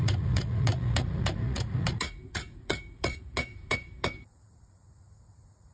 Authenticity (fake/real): fake